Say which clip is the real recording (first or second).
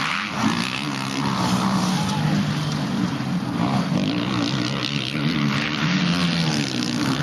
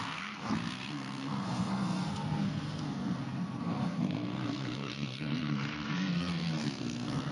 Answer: first